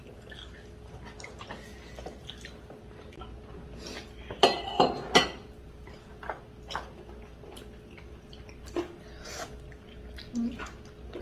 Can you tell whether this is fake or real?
real